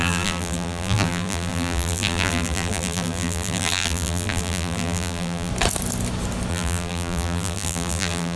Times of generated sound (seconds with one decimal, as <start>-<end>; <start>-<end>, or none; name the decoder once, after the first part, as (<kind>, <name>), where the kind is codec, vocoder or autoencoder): 0.0-5.5 (vocoder, BigVGAN v2); 6.5-8.4